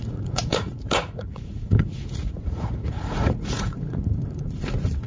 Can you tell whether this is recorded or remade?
remade